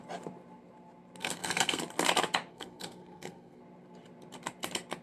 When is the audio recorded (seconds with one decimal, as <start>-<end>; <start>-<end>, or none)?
0.0-1.2; 1.8-2.5; 3.6-5.0